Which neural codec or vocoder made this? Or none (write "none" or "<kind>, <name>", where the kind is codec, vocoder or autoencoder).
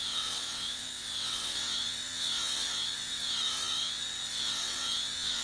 vocoder, WaveNeXt